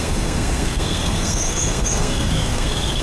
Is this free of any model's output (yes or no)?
no